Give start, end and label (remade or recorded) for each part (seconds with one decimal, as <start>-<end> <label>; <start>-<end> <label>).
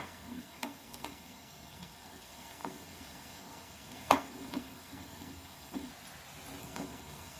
0.0-5.9 remade; 5.9-6.6 recorded; 6.6-7.4 remade